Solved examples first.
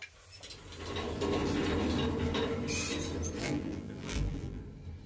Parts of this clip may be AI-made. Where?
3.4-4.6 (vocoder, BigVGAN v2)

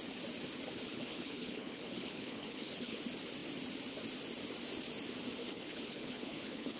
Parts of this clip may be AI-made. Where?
0.9-3.0 (codec, HILCodec); 5.4-6.8

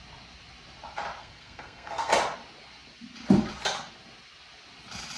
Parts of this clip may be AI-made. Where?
1.2-2.1 (codec, SNAC)